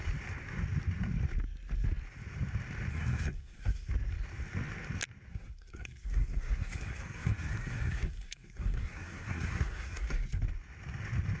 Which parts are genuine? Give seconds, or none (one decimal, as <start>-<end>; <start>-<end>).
0.0-2.9; 3.9-5.3; 10.4-11.4